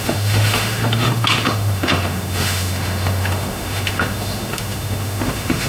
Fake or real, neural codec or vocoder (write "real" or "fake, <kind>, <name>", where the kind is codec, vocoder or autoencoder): fake, autoencoder, DAC-VAE